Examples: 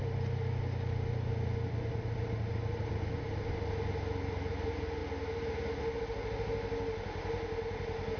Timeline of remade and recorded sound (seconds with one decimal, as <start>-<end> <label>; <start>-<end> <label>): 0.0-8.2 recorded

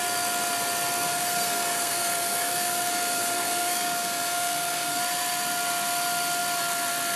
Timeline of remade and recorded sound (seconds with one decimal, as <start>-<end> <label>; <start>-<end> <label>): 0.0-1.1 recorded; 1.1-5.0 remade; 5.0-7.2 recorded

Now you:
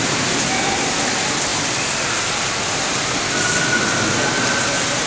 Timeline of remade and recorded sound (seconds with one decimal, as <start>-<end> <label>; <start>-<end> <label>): 0.0-5.1 recorded

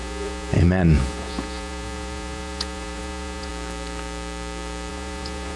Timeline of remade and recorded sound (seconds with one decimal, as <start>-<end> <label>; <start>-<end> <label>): 0.0-3.5 remade; 3.5-4.9 recorded; 4.9-5.6 remade

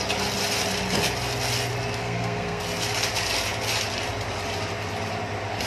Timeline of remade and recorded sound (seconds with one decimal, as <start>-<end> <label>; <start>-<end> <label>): 0.0-2.0 recorded; 2.0-2.6 remade; 2.6-5.7 recorded

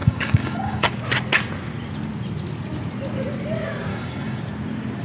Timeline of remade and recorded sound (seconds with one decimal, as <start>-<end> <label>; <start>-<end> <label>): 0.0-0.9 remade; 0.9-3.9 recorded; 3.9-4.4 remade; 4.4-5.0 recorded